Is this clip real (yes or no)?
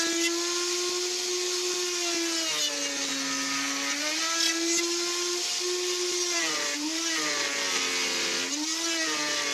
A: yes